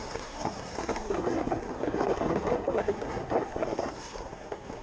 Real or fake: fake